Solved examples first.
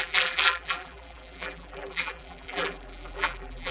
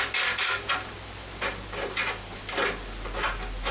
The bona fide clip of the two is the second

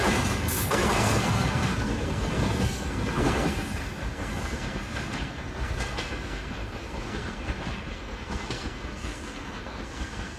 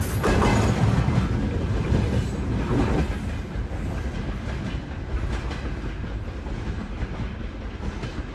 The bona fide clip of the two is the second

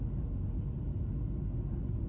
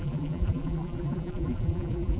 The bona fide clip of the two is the first